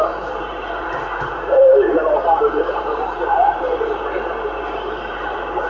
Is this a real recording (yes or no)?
no